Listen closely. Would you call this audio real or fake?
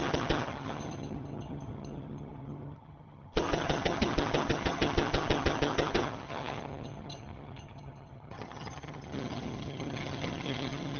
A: fake